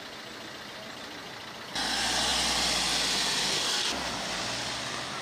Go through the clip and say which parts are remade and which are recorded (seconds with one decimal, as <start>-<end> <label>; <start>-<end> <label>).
0.0-3.4 recorded; 3.4-3.9 remade; 3.9-5.2 recorded

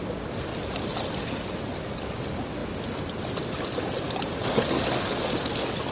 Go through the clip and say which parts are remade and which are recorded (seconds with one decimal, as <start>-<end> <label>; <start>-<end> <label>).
0.0-5.9 recorded

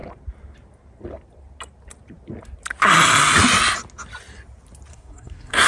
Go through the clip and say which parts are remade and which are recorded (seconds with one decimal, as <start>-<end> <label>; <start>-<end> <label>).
0.0-4.9 recorded; 4.9-5.7 remade

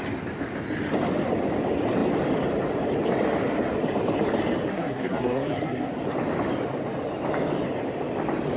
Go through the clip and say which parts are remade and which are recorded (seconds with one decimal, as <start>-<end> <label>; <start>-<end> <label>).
0.0-4.7 recorded; 4.7-5.9 remade; 5.9-8.6 recorded